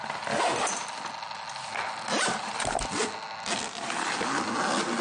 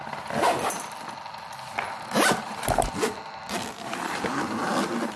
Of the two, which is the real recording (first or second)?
first